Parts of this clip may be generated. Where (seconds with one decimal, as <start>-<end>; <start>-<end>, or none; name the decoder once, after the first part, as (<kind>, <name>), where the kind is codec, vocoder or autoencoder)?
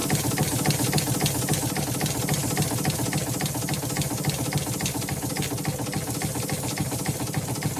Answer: none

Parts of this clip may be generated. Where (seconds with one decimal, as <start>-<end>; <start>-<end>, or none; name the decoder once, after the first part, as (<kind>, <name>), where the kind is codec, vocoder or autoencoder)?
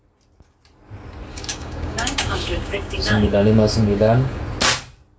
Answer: 1.3-4.4 (codec, DAC)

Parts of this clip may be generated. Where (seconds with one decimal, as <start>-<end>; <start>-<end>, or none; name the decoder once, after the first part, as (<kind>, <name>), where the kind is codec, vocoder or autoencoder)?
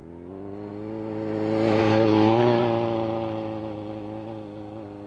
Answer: 1.8-2.6 (codec, DAC)